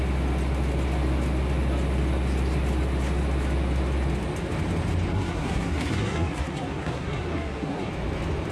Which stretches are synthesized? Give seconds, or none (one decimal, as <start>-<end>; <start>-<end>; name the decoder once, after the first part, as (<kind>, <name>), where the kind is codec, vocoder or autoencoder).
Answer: 5.1-7.9 (codec, SNAC)